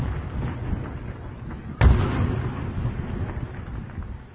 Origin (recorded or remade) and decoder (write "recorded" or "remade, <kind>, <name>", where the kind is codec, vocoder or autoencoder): recorded